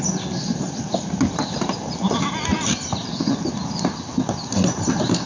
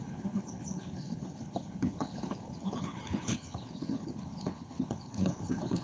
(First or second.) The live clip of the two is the first